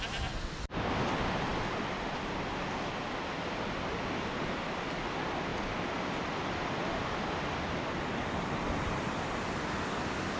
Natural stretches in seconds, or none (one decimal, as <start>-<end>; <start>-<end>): 0.0-10.4